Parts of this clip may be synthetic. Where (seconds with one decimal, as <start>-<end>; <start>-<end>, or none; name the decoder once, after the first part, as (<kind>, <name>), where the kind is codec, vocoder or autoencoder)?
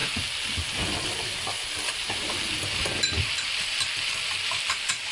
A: none